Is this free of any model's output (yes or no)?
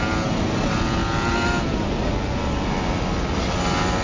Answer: yes